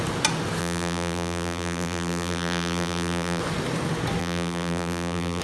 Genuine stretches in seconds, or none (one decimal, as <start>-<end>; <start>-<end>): 0.0-0.6; 3.4-4.2